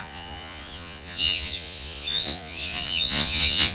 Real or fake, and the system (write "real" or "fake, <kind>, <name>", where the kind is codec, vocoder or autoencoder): fake, vocoder, Vocos